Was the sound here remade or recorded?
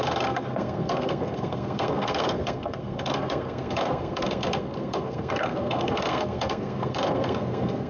remade